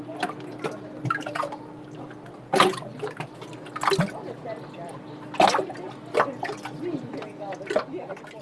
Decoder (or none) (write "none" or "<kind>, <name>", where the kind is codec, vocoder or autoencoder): none